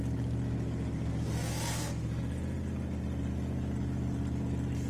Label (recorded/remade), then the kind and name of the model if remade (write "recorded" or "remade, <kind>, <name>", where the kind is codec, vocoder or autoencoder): recorded